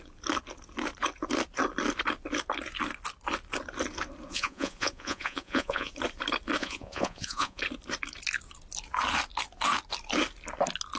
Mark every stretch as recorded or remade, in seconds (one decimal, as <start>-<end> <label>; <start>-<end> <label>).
0.0-4.3 recorded; 4.3-5.9 remade; 5.9-6.6 recorded; 6.6-7.6 remade; 7.6-11.0 recorded